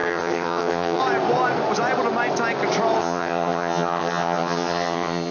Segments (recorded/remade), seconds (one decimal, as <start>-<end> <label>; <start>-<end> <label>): 0.0-1.0 remade; 1.0-3.0 recorded; 3.0-5.3 remade